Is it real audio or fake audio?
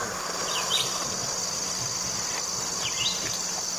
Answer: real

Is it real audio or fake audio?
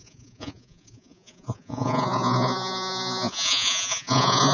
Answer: fake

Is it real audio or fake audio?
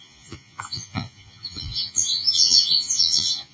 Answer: fake